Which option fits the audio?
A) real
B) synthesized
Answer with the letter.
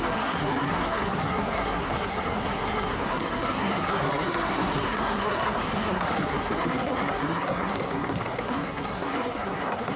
B